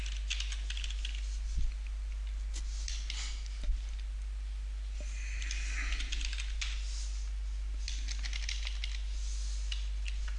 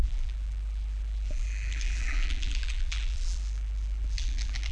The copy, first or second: second